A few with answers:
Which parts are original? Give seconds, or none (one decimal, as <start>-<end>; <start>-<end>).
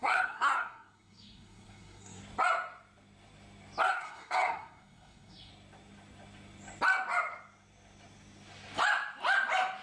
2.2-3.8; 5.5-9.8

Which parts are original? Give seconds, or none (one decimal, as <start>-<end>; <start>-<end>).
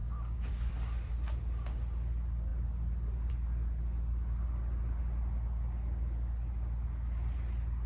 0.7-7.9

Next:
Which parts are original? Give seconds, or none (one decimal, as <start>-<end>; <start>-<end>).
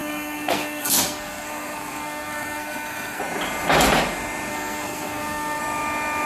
3.2-4.5; 5.6-6.3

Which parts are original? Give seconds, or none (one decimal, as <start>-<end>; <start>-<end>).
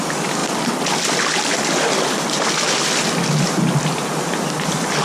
0.0-5.0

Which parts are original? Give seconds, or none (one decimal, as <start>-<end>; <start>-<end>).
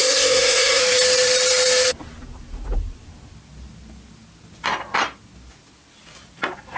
0.8-6.8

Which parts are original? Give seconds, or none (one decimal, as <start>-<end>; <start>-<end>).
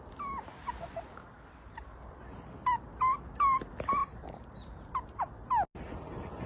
0.0-1.9; 2.6-4.0; 5.2-6.5